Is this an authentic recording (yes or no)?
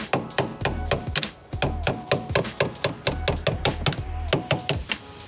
yes